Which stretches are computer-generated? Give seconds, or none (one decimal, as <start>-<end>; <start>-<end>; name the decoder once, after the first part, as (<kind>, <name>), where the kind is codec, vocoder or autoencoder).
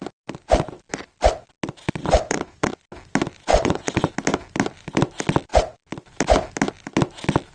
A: 2.0-2.8 (vocoder, WaveNeXt); 3.5-4.1